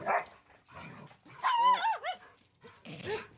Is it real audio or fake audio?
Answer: real